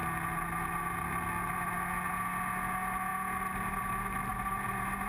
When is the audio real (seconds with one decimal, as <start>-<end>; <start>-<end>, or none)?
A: 0.0-4.3